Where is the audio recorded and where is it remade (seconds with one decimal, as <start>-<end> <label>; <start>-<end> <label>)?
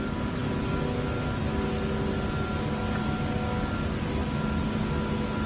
0.0-5.5 recorded